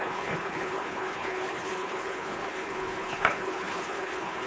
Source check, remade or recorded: remade